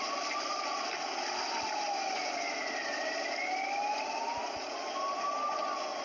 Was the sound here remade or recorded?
recorded